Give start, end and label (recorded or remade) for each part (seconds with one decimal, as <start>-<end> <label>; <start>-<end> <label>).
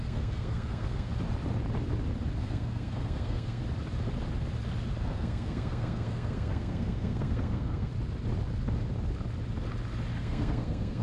0.0-1.1 remade; 1.1-2.4 recorded; 2.4-3.6 remade; 3.6-5.0 recorded; 5.0-7.9 remade; 7.9-10.2 recorded; 10.2-11.0 remade